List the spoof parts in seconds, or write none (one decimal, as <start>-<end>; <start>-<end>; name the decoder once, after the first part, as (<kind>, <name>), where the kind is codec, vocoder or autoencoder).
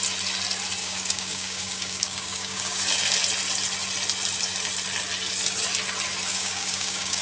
0.8-2.8 (codec, DAC); 6.3-7.2